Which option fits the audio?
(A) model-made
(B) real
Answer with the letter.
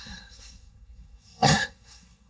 A